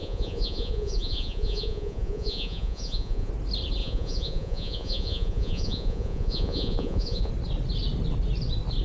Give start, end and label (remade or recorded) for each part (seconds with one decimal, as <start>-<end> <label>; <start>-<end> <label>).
0.0-3.3 remade; 3.3-3.8 recorded; 3.8-7.3 remade; 7.3-8.8 recorded